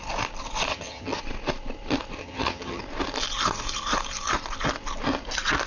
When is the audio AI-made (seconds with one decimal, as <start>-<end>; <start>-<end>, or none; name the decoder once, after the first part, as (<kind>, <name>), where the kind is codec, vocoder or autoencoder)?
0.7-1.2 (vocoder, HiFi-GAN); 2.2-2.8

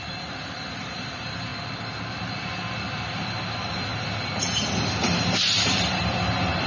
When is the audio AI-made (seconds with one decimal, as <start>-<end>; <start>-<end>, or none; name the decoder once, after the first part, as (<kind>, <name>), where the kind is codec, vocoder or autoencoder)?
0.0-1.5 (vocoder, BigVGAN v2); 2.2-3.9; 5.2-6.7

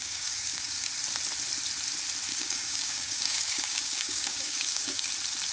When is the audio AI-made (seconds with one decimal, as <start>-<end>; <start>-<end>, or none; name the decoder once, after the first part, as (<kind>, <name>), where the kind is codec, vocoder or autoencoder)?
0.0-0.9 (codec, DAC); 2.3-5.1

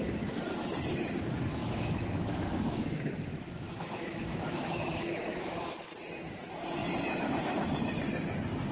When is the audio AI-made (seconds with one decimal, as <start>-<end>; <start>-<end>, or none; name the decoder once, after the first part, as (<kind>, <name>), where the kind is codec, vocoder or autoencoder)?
1.6-5.5 (autoencoder, DAC-VAE)

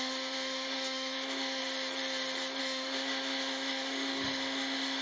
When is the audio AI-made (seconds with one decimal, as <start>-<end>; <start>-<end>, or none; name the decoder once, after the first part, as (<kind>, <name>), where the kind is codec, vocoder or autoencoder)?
0.0-1.6 (autoencoder, DAC-VAE); 2.6-5.0